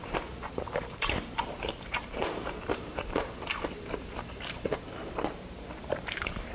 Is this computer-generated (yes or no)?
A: yes